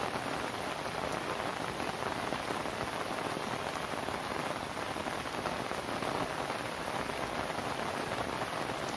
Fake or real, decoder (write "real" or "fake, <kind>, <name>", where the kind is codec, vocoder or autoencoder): real